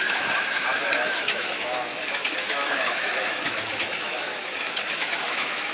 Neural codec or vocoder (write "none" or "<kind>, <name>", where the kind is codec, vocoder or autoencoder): autoencoder, DAC-VAE